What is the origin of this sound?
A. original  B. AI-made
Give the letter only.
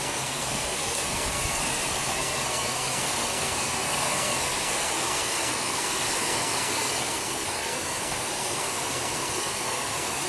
B